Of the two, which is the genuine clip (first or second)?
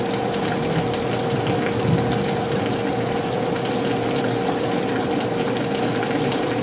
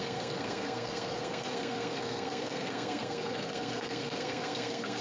first